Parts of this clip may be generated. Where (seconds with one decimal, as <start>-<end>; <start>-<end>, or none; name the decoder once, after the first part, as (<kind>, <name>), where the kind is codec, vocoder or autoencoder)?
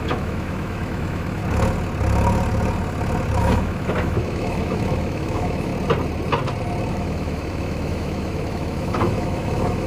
0.0-1.4 (autoencoder, DAC-VAE); 3.4-5.7; 6.9-9.9